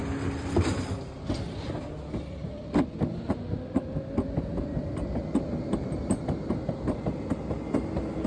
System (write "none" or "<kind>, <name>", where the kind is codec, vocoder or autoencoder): none